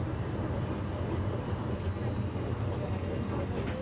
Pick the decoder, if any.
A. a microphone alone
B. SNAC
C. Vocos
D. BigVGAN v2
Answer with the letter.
A